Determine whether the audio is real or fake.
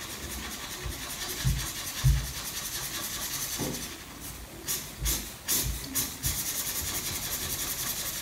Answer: real